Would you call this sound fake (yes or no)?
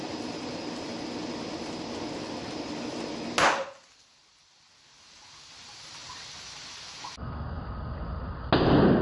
no